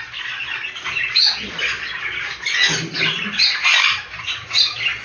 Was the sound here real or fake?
real